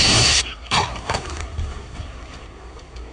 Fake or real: fake